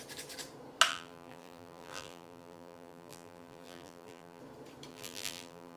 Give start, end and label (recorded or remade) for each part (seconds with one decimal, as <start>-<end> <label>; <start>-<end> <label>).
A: 0.0-0.9 recorded; 0.9-4.4 remade; 4.4-4.9 recorded; 4.9-5.8 remade